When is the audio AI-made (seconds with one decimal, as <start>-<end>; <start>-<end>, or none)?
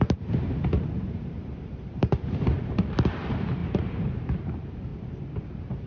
0.0-4.9; 5.4-5.9